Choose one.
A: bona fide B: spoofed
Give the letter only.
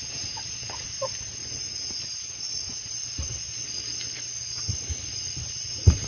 A